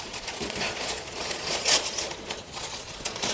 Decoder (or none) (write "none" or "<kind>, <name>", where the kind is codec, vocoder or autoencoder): vocoder, Vocos